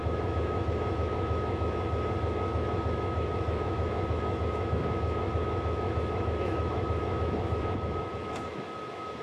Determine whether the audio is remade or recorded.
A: remade